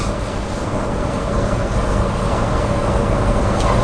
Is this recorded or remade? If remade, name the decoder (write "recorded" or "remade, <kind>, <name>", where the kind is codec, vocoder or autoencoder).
remade, codec, SNAC